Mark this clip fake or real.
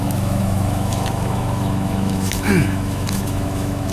fake